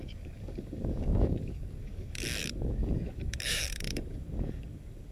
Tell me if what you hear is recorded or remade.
remade